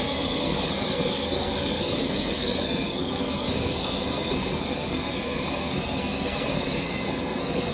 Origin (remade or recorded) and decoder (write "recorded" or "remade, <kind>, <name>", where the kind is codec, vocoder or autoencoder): remade, codec, SNAC